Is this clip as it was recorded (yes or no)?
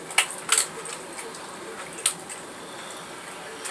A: yes